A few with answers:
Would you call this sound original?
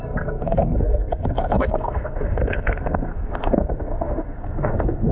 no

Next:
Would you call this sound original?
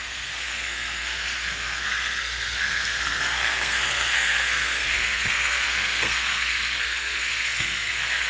no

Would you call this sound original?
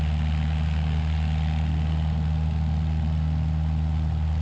yes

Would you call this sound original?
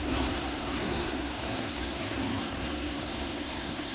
no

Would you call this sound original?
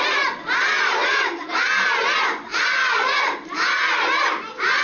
yes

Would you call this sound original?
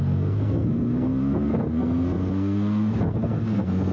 no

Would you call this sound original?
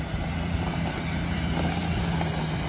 yes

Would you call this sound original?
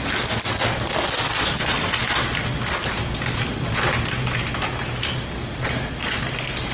yes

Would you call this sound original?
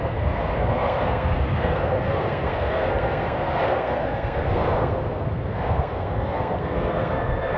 no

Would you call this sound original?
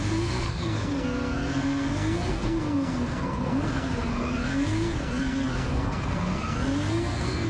no